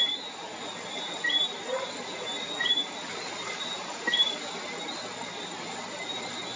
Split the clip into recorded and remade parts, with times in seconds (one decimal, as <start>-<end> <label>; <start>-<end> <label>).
0.0-6.6 recorded